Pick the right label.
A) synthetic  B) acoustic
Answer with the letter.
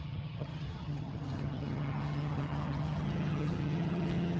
A